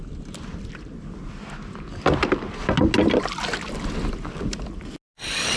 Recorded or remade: recorded